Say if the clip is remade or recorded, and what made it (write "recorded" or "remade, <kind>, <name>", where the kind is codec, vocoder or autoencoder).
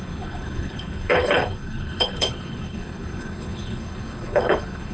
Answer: remade, codec, HILCodec